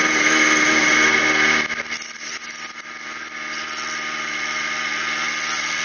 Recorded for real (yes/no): yes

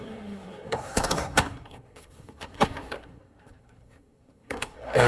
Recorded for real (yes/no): no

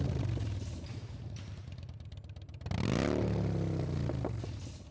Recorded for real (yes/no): yes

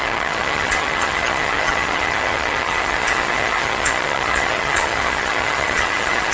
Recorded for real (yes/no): no